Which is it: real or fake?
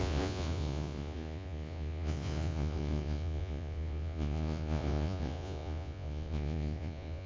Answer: fake